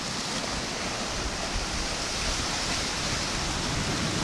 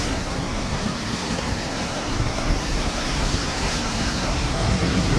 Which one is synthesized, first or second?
second